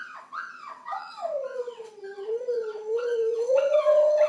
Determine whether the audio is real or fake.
fake